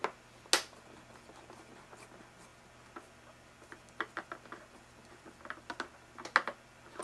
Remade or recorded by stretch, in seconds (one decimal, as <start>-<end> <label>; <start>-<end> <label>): 0.0-7.0 recorded